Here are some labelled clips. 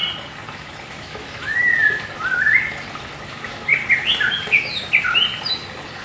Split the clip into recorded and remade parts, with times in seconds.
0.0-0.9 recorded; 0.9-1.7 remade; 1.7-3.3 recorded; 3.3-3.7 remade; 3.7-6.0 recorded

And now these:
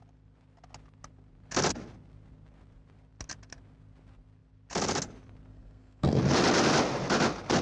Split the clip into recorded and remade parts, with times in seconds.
0.0-5.5 recorded; 5.5-6.2 remade; 6.2-7.6 recorded